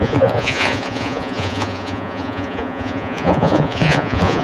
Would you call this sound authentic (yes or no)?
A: no